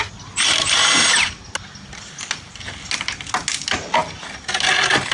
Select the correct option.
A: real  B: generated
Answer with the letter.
A